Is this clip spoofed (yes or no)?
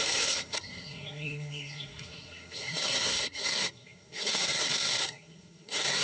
yes